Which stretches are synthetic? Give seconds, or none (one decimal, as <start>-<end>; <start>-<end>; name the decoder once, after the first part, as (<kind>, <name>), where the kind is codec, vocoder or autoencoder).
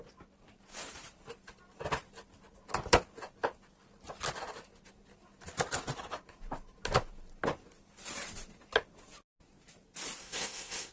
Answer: 10.2-10.9 (codec, SNAC)